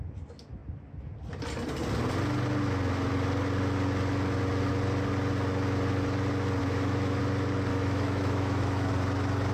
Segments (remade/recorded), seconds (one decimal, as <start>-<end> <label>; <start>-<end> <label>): 0.0-6.6 recorded; 6.6-7.2 remade; 7.2-7.7 recorded; 7.7-8.9 remade; 8.9-9.5 recorded